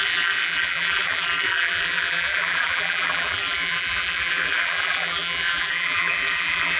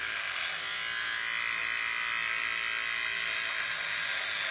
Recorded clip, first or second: second